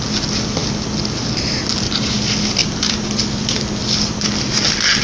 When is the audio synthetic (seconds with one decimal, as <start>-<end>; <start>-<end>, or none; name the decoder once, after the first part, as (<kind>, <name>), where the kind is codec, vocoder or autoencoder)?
none